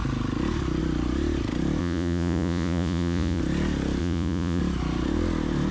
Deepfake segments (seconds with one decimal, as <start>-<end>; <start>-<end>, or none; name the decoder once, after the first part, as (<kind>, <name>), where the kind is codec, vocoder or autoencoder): 1.8-3.4 (vocoder, Vocos); 4.0-4.6

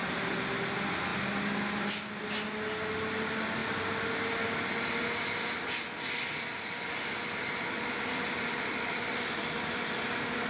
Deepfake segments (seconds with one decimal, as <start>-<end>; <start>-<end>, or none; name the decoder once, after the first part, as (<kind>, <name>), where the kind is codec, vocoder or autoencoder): none

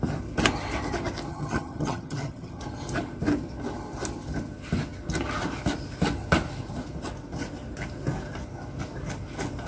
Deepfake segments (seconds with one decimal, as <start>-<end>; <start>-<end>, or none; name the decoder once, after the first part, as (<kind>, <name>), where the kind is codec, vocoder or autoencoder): 1.3-2.6 (vocoder, HiFi-GAN)

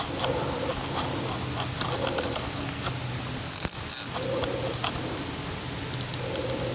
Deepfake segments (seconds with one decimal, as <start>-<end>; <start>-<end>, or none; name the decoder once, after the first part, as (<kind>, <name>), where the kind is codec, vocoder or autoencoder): 2.3-2.9 (codec, SNAC)

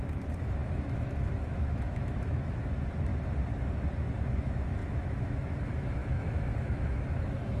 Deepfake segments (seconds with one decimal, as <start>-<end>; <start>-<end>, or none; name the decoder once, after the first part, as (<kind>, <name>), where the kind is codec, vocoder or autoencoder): 0.0-3.1 (autoencoder, DAC-VAE); 4.2-7.6